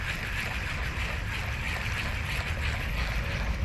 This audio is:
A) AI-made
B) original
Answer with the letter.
B